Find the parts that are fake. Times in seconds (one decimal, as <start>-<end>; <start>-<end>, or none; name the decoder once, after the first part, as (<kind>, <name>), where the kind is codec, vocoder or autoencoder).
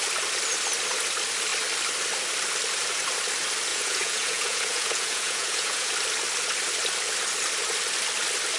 3.7-5.9 (vocoder, Vocos)